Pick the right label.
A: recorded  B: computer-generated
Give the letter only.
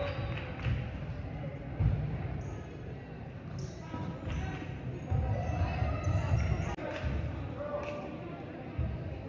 A